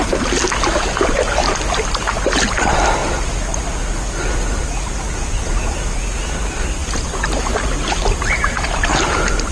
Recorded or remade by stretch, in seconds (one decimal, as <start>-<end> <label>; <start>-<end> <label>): 0.0-9.5 recorded

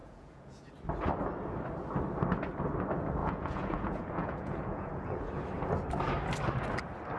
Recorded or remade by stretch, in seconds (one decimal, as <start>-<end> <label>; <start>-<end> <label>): 0.0-0.7 remade; 0.7-3.2 recorded; 3.2-5.3 remade; 5.3-7.2 recorded

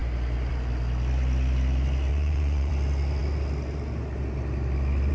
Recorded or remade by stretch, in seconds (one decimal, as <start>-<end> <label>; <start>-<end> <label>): 0.0-2.1 recorded; 2.1-2.7 remade; 2.7-5.1 recorded

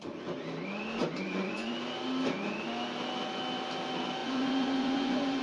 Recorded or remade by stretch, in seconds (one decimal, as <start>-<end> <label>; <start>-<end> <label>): 0.0-1.0 recorded; 1.0-1.7 remade; 1.7-4.2 recorded; 4.2-5.4 remade

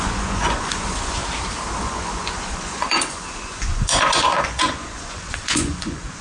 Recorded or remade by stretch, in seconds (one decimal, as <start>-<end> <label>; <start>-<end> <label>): 0.0-1.2 remade; 1.2-1.8 recorded; 1.8-6.2 remade

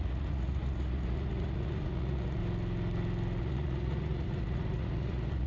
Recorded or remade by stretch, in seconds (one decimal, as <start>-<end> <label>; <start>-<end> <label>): 0.0-2.4 remade; 2.4-3.4 recorded; 3.4-5.5 remade

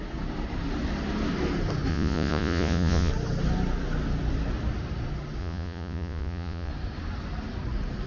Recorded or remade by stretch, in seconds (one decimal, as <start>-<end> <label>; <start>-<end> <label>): 0.0-1.9 recorded; 1.9-3.1 remade; 3.1-5.4 recorded; 5.4-6.7 remade; 6.7-8.1 recorded

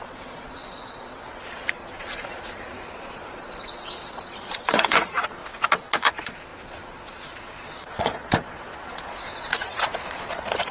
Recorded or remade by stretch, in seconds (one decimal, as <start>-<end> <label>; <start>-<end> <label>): 0.0-0.6 remade; 0.6-1.3 recorded; 1.3-5.4 remade; 5.4-6.0 recorded; 6.0-10.7 remade